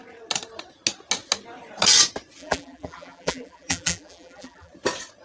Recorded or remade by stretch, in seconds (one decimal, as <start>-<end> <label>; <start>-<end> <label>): 0.0-2.4 recorded; 2.4-4.7 remade; 4.7-5.2 recorded